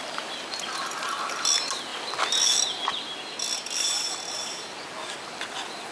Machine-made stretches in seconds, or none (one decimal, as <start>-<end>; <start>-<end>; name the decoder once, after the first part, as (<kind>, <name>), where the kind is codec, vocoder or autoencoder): none